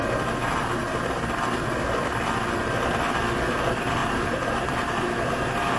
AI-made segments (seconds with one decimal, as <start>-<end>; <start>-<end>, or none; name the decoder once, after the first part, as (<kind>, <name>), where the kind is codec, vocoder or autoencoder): 4.0-5.8 (vocoder, BigVGAN v2)